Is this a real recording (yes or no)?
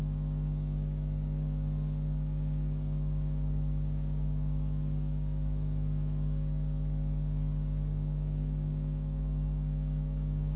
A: no